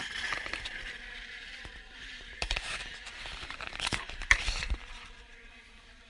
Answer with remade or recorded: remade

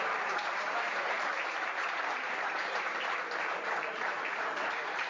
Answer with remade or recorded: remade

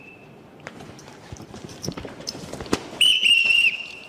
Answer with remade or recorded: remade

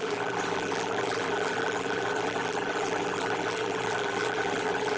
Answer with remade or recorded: remade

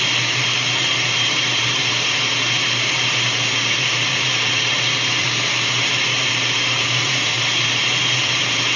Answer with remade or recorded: remade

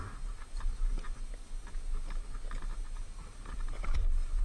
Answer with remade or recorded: recorded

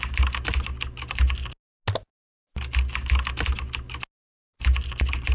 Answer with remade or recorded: recorded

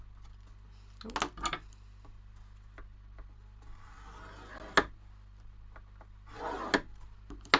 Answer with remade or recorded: recorded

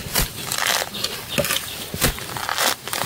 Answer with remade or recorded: recorded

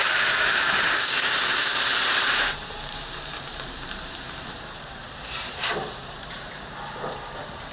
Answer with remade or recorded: remade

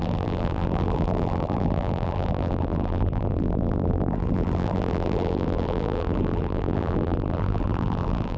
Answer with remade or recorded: remade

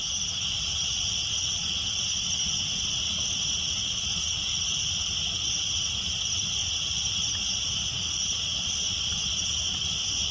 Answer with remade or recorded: remade